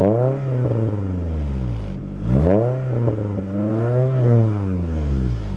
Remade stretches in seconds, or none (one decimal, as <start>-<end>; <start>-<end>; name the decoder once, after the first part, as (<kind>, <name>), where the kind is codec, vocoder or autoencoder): 3.7-5.6 (codec, DAC)